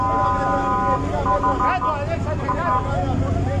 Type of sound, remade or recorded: recorded